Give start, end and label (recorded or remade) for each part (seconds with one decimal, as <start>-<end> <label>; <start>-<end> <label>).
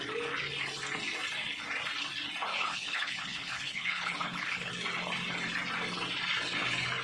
0.0-2.5 recorded; 2.5-4.7 remade; 4.7-7.0 recorded